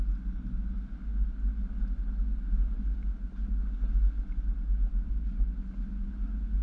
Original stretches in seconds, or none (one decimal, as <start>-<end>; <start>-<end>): 0.0-6.6